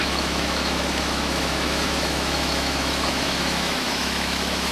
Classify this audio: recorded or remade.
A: remade